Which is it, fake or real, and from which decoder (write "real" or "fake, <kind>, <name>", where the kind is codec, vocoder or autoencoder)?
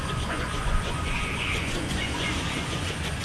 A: fake, vocoder, Vocos